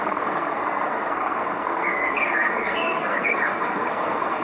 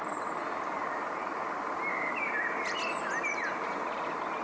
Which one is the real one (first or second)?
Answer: second